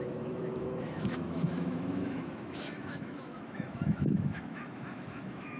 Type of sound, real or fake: fake